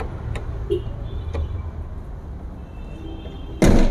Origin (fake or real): real